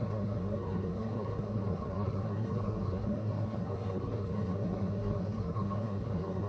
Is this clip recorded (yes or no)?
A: no